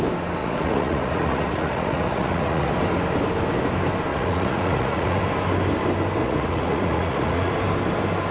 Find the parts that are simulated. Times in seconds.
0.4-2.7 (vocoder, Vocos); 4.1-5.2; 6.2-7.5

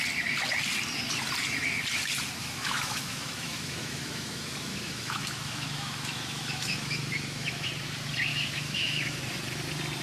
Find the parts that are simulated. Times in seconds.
2.4-7.7 (autoencoder, DAC-VAE); 8.3-9.2

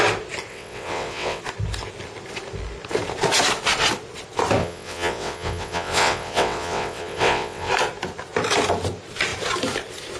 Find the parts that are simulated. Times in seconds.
0.5-1.4 (vocoder, WaveNeXt); 4.6-7.7

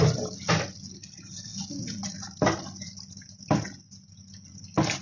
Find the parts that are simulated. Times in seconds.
none

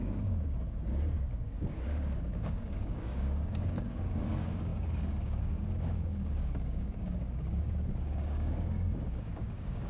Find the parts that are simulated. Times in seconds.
0.0-9.9 (codec, DAC)

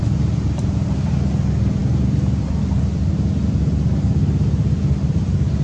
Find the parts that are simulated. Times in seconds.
none